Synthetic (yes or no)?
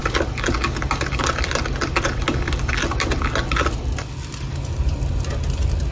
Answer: no